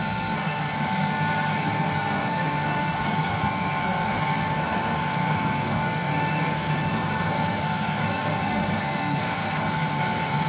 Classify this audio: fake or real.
fake